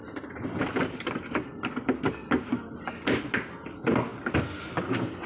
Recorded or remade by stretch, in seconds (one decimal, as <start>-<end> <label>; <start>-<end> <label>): 0.0-5.3 recorded